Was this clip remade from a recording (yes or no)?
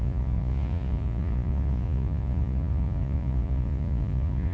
yes